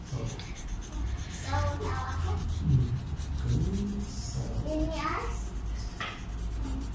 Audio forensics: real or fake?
real